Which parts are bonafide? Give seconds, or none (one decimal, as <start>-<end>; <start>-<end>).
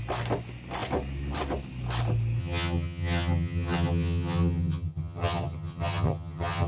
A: 0.0-2.4